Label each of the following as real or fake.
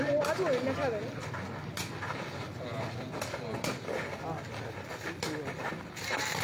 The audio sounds real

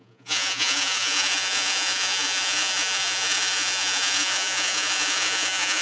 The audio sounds fake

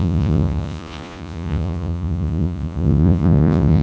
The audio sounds fake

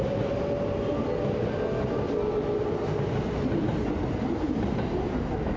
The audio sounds real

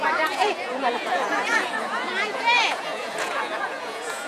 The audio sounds fake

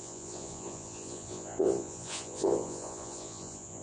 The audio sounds fake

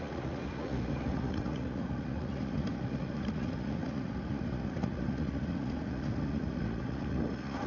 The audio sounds fake